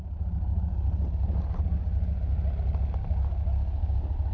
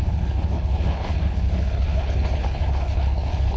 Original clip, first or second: first